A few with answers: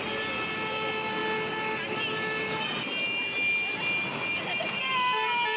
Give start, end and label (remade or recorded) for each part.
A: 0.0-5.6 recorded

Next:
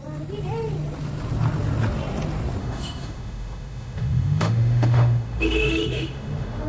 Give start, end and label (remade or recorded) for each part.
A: 0.0-2.6 recorded; 2.6-6.7 remade

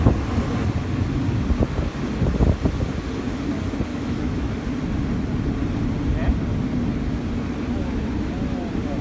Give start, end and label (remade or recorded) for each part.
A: 0.0-3.9 recorded; 3.9-4.6 remade; 4.6-9.0 recorded

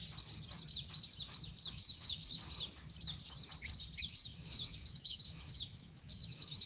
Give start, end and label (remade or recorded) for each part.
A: 0.0-1.7 recorded; 1.7-2.4 remade; 2.4-4.0 recorded; 4.0-6.7 remade

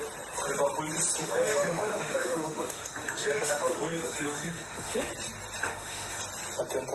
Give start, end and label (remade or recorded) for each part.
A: 0.0-1.2 recorded; 1.2-5.1 remade; 5.1-5.6 recorded; 5.6-6.2 remade; 6.2-6.9 recorded